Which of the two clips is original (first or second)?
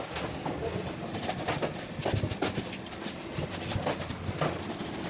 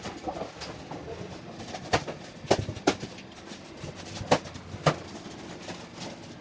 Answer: second